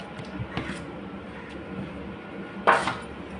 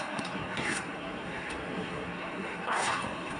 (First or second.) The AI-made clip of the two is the second